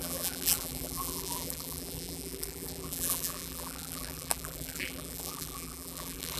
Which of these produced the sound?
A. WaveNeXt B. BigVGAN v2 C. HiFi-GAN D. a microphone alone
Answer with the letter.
B